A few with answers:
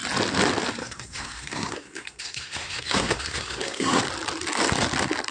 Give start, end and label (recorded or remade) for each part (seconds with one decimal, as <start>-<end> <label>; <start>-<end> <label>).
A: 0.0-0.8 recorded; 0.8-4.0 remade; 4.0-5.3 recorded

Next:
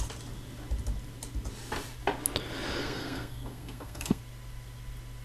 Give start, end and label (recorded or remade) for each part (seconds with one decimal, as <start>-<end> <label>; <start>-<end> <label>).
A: 0.0-2.8 recorded; 2.8-4.2 remade; 4.2-5.2 recorded

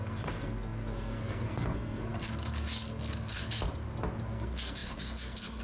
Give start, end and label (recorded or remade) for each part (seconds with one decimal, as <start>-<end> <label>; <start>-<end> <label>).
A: 0.0-3.6 remade; 3.6-4.2 recorded; 4.2-5.6 remade